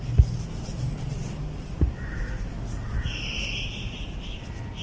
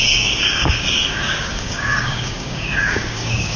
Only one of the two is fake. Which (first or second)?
second